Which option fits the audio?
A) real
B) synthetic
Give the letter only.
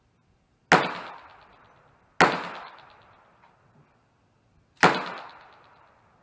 A